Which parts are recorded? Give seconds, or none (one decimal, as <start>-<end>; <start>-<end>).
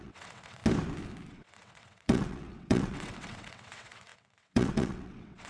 0.6-1.3